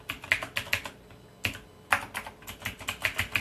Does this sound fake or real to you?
real